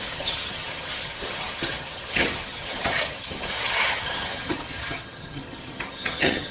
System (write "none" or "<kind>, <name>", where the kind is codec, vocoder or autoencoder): vocoder, HiFi-GAN